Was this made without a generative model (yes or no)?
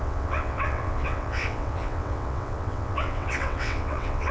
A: no